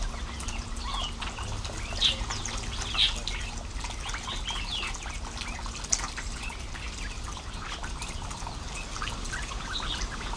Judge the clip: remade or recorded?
recorded